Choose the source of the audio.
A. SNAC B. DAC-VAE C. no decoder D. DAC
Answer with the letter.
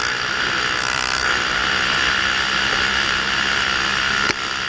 C